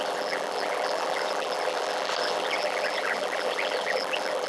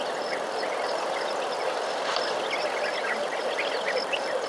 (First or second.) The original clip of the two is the second